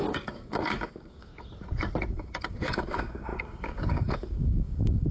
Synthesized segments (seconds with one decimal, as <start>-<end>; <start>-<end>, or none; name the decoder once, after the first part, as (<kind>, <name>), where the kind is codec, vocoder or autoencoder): 0.0-1.3 (codec, DAC); 2.1-5.1